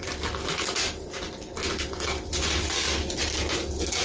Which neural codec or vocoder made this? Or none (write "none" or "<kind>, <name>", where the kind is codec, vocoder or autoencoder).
none